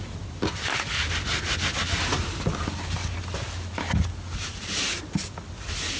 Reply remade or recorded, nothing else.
recorded